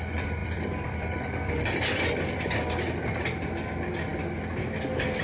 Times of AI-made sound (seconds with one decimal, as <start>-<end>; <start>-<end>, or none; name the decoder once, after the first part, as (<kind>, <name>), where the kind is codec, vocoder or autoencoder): 0.4-1.5 (vocoder, BigVGAN v2)